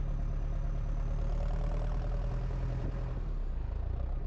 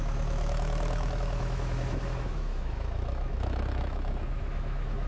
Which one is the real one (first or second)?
first